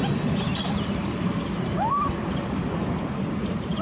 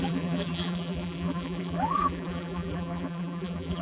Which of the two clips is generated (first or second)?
second